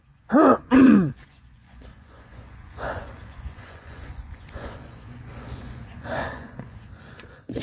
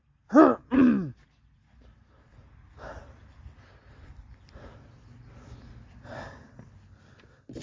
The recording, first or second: second